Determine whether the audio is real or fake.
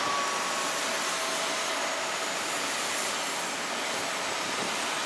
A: real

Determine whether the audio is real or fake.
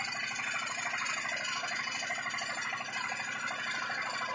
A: real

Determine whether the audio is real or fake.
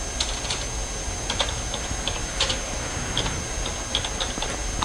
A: real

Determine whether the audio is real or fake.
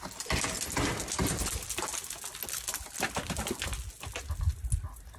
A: real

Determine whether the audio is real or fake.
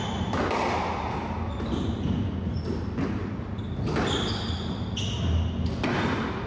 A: real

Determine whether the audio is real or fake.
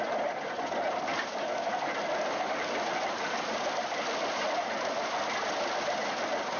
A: real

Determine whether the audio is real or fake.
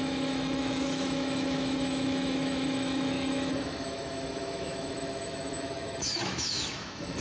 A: fake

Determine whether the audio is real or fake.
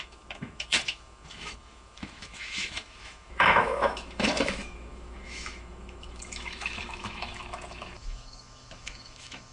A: fake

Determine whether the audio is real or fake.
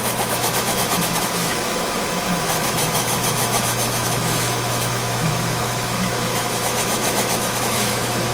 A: fake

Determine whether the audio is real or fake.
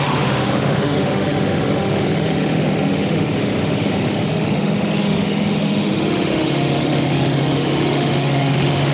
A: fake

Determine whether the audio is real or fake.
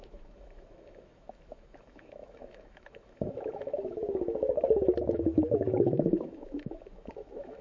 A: fake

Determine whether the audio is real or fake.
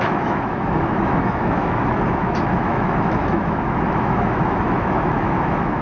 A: fake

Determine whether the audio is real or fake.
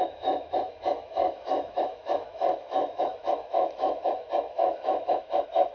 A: fake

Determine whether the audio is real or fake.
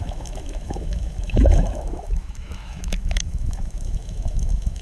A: fake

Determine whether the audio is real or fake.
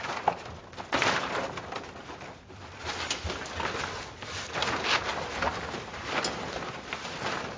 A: real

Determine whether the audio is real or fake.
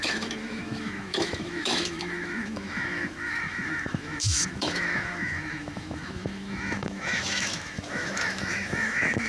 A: fake